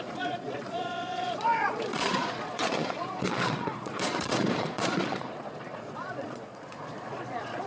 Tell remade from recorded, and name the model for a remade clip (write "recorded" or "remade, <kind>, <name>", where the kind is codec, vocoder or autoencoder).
remade, vocoder, Vocos